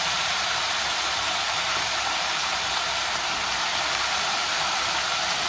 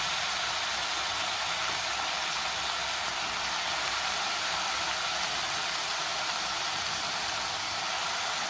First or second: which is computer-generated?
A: first